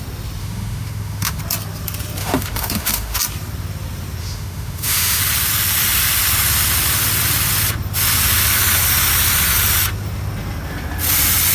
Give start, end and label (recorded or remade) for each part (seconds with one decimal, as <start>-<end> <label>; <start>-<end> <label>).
0.0-0.4 recorded; 0.4-1.4 remade; 1.4-2.2 recorded; 2.2-3.2 remade; 3.2-4.2 recorded; 4.2-5.2 remade; 5.2-11.5 recorded